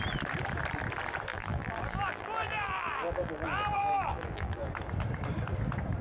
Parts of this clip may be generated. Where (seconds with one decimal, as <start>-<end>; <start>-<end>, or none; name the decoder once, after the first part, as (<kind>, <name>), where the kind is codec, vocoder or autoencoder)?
1.3-4.7 (vocoder, BigVGAN v2)